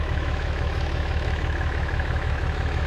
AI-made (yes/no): yes